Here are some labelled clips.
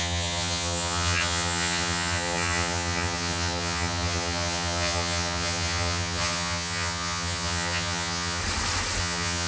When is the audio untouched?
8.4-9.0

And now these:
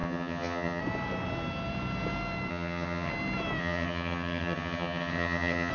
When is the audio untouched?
0.8-2.5; 3.1-3.6

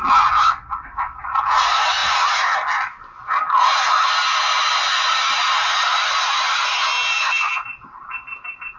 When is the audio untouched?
0.0-8.8

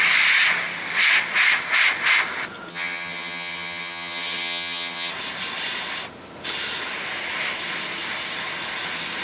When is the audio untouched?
0.0-2.7; 5.1-9.2

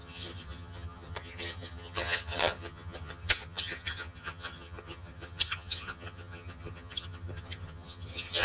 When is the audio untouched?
none

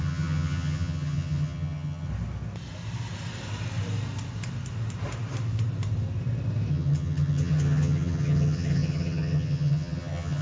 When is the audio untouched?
2.1-6.7